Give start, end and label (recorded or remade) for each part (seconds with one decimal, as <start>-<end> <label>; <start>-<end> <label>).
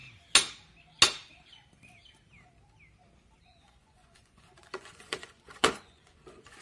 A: 0.0-3.4 recorded; 3.4-6.6 remade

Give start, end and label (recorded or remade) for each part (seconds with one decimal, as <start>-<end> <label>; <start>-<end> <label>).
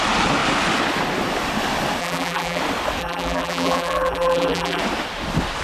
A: 0.0-2.0 recorded; 2.0-2.6 remade; 2.6-3.0 recorded; 3.0-4.8 remade; 4.8-5.6 recorded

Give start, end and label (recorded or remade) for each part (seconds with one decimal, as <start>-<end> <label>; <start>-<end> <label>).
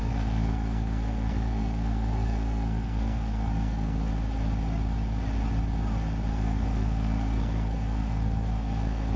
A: 0.0-4.1 remade; 4.1-6.3 recorded; 6.3-9.2 remade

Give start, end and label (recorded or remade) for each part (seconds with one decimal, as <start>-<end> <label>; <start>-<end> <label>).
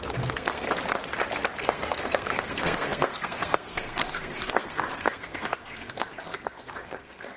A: 0.0-0.7 remade; 0.7-1.6 recorded; 1.6-7.4 remade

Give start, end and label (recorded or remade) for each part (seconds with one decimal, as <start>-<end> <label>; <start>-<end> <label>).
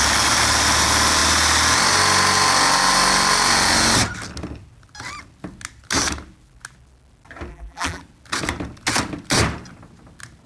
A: 0.0-7.5 recorded; 7.5-8.0 remade; 8.0-10.5 recorded